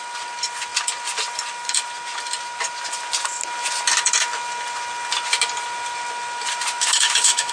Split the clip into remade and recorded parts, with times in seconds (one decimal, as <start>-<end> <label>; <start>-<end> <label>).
0.0-6.9 recorded; 6.9-7.5 remade